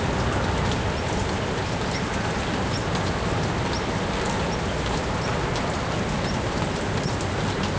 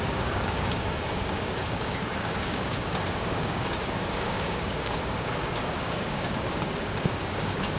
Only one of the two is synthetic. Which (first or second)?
second